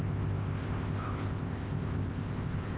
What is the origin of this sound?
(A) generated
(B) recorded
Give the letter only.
A